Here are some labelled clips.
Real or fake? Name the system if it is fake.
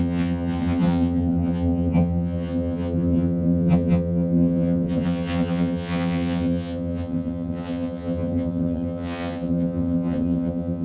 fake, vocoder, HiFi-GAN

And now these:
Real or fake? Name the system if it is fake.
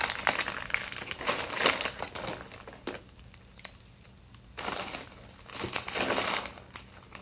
real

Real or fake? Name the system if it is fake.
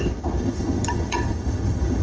fake, vocoder, HiFi-GAN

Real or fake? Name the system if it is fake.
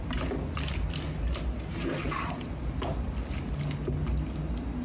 real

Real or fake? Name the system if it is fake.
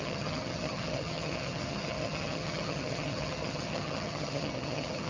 fake, vocoder, HiFi-GAN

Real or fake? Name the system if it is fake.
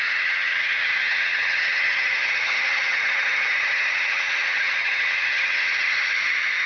fake, vocoder, HiFi-GAN